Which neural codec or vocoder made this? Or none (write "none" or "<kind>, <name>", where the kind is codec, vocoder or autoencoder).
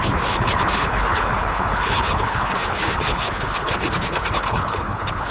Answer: codec, HILCodec